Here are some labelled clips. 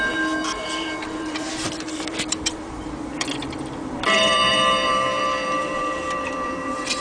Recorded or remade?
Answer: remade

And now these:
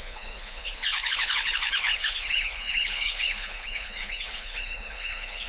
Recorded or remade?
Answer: remade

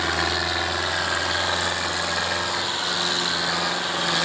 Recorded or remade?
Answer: recorded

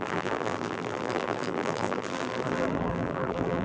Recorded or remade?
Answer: remade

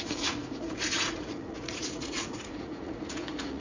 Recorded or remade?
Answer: remade